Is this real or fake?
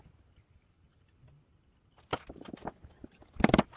real